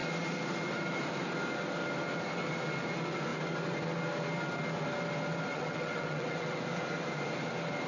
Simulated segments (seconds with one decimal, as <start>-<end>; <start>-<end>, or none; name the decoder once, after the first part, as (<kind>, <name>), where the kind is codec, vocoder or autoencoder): 5.5-6.6 (vocoder, WaveNeXt)